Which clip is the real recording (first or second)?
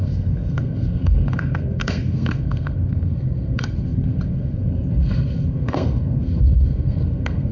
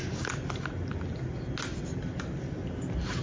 second